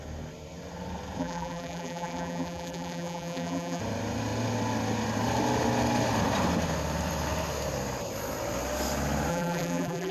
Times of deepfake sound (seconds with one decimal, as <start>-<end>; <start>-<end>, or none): 1.2-3.8; 9.3-10.1